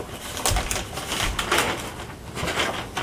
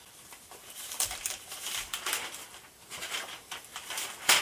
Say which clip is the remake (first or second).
second